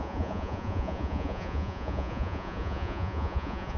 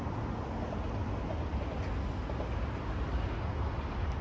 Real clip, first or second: second